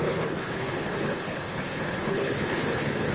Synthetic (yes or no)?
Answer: yes